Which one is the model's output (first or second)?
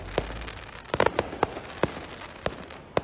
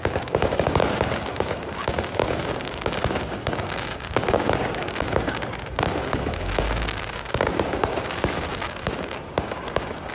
second